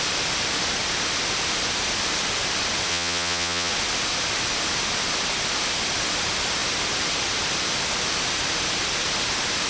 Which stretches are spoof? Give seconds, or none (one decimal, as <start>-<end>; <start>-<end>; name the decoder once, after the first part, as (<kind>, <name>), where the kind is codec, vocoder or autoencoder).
2.9-3.7 (vocoder, Vocos)